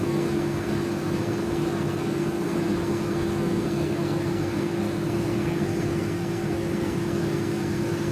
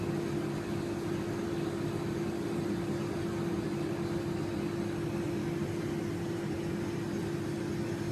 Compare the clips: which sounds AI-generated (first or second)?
first